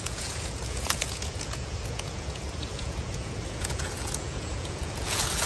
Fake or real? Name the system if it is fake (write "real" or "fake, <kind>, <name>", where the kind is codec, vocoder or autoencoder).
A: fake, vocoder, Vocos